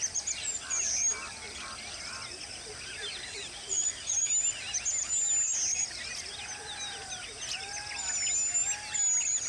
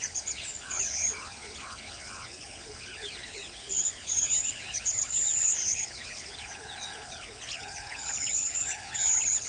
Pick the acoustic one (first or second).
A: first